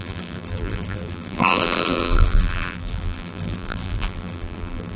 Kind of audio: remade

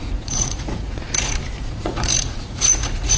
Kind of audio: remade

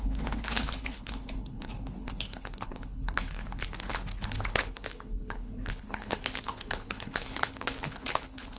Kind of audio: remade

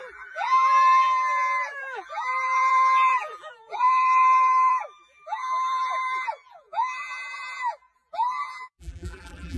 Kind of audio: remade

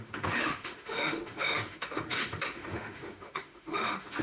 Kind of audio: remade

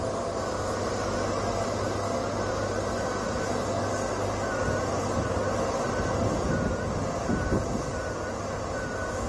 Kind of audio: recorded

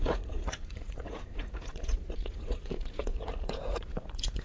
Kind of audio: remade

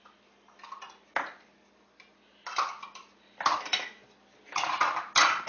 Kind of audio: recorded